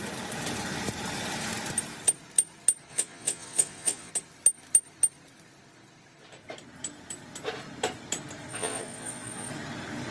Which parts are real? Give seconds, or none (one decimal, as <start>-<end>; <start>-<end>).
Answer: 0.0-2.9; 4.1-8.5; 9.5-10.1